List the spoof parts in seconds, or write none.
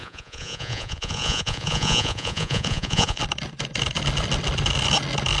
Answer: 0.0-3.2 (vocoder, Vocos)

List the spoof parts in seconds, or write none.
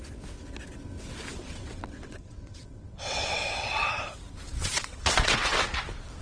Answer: 1.3-4.1 (vocoder, WaveNeXt); 4.5-5.7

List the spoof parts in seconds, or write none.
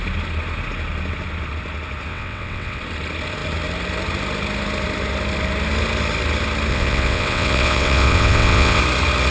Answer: 2.1-2.8 (vocoder, WaveNeXt); 6.7-8.8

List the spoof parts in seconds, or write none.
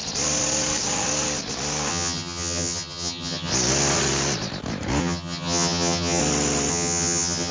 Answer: 1.9-3.5 (vocoder, HiFi-GAN); 5.0-6.2; 6.7-7.5